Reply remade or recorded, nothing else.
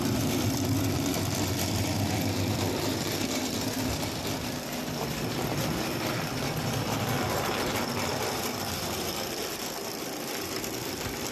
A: remade